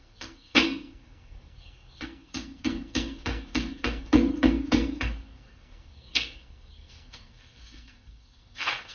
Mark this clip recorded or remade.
remade